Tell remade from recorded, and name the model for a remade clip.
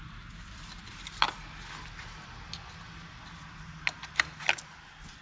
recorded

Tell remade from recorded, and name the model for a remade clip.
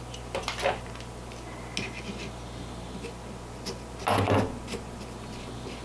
recorded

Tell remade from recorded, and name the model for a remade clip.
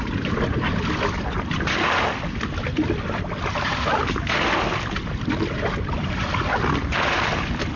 recorded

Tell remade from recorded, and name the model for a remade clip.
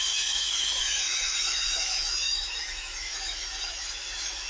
remade, autoencoder, DAC-VAE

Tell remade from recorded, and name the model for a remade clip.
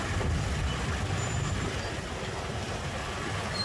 recorded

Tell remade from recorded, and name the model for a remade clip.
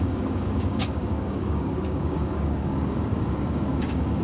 remade, codec, DAC